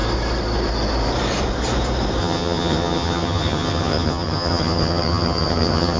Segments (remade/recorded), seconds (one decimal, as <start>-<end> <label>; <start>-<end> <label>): 0.0-2.2 recorded; 2.2-6.0 remade